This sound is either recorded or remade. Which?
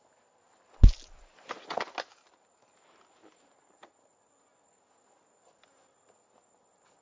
recorded